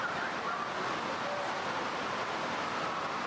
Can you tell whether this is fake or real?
real